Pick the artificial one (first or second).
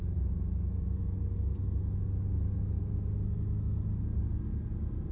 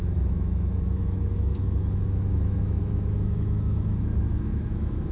second